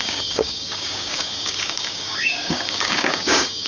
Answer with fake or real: fake